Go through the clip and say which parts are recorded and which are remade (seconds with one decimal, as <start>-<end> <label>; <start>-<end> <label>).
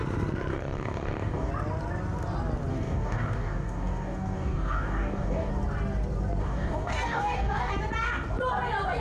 0.0-0.5 recorded; 0.5-1.5 remade; 1.5-2.7 recorded; 2.7-5.5 remade; 5.5-6.4 recorded; 6.4-7.7 remade; 7.7-9.0 recorded